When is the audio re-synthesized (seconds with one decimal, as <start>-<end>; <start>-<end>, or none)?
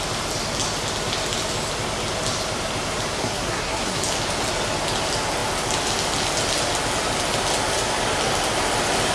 3.2-4.0